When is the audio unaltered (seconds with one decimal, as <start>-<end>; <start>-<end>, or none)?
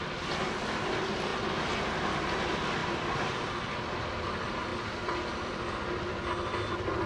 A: 0.0-2.8; 3.4-7.1